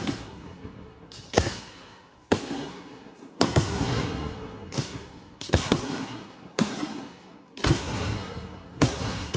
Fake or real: fake